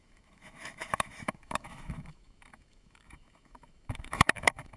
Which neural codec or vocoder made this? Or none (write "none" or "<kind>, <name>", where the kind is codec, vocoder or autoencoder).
autoencoder, DAC-VAE